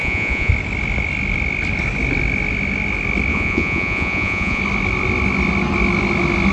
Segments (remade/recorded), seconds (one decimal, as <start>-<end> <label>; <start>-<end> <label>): 0.0-0.5 remade; 0.5-3.3 recorded; 3.3-4.6 remade; 4.6-6.5 recorded

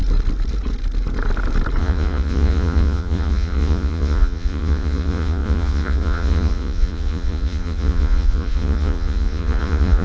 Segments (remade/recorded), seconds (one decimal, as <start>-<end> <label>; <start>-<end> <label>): 0.0-1.8 recorded; 1.8-10.0 remade

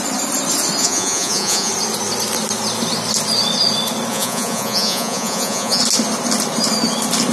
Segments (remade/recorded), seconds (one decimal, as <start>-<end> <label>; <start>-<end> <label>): 0.0-0.8 recorded; 0.8-1.7 remade; 1.7-4.1 recorded; 4.1-5.8 remade; 5.8-7.3 recorded

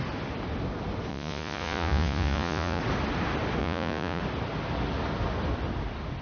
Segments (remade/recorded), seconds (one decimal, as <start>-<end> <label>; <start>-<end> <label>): 0.0-1.1 recorded; 1.1-2.8 remade; 2.8-3.6 recorded; 3.6-4.2 remade; 4.2-6.2 recorded

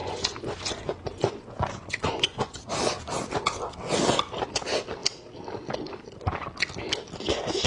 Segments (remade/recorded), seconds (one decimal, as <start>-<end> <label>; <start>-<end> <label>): 0.0-2.6 remade; 2.6-7.7 recorded

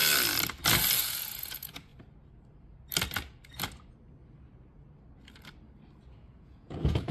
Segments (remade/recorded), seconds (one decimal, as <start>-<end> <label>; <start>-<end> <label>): 0.0-1.0 recorded; 1.0-1.9 remade; 1.9-6.2 recorded; 6.2-7.1 remade

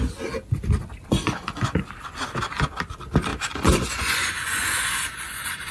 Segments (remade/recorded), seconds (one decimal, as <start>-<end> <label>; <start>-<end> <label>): 0.0-1.1 recorded; 1.1-1.8 remade; 1.8-3.3 recorded; 3.3-5.7 remade

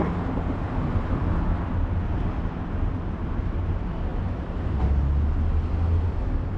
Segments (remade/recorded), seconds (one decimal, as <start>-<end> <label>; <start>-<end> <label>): 0.0-6.6 recorded